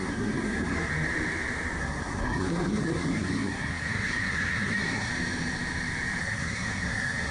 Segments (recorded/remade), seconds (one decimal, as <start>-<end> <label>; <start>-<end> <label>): 0.0-0.9 remade; 0.9-1.8 recorded; 1.8-5.1 remade; 5.1-6.2 recorded; 6.2-7.3 remade